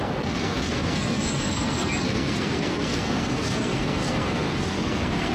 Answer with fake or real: fake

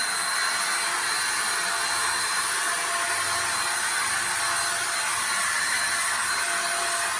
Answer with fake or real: real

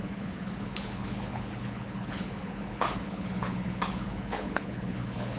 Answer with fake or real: fake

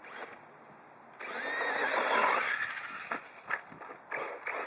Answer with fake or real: real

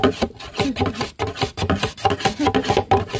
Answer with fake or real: real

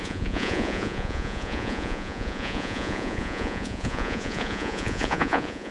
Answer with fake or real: fake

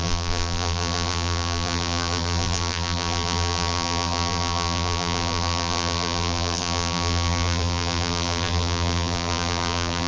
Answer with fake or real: fake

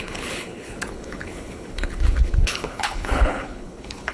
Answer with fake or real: fake